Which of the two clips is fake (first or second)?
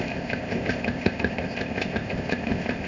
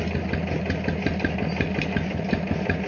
first